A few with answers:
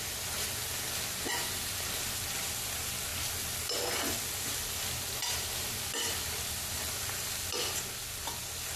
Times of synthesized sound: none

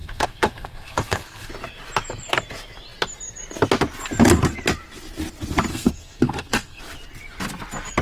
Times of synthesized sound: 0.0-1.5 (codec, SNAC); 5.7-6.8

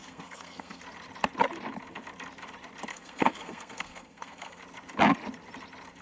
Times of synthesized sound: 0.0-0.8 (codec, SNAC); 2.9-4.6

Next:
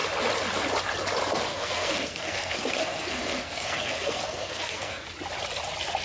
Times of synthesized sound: 1.5-5.1 (codec, SNAC)

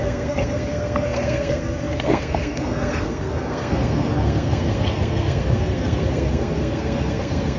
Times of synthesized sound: 0.0-7.6 (codec, SNAC)

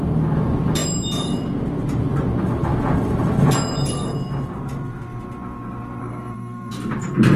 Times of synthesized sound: 6.0-6.7 (codec, SNAC)